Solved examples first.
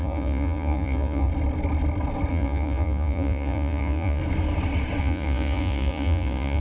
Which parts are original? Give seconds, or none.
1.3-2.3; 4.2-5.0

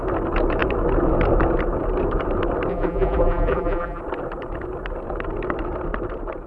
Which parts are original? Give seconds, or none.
0.0-2.7; 4.0-6.5

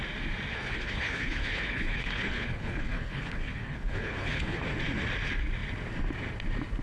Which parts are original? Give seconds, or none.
0.0-0.5; 4.6-6.8

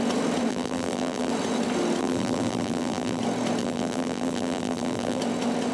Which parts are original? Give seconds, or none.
0.0-0.5; 1.3-2.0; 3.2-3.6; 5.2-5.7

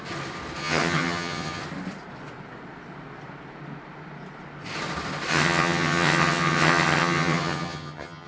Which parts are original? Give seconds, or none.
0.0-0.6; 1.6-5.3